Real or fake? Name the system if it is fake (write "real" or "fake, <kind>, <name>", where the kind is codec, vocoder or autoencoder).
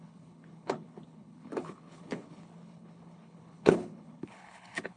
fake, codec, HILCodec